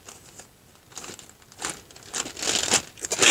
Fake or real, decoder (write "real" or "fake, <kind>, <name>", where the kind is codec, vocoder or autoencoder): real